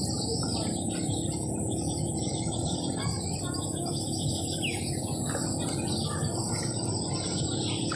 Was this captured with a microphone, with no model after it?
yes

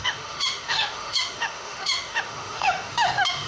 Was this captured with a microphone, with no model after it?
no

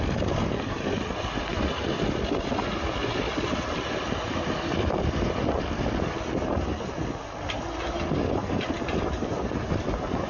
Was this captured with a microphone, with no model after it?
yes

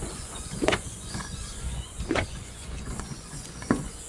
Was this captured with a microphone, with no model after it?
no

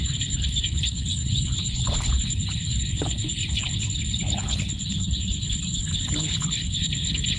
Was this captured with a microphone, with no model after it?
no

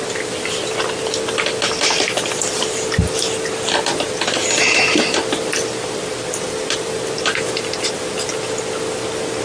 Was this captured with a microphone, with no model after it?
yes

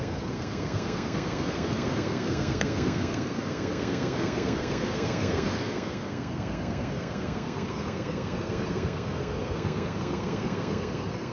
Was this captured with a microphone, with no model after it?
no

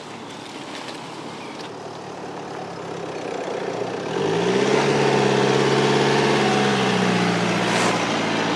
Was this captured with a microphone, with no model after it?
yes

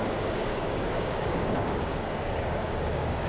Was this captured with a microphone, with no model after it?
no